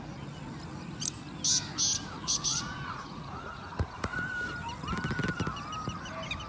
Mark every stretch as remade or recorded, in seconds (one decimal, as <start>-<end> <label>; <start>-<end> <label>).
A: 0.0-2.2 recorded; 2.2-4.2 remade; 4.2-6.5 recorded